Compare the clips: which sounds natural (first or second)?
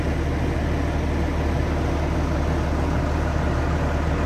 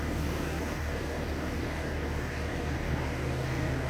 first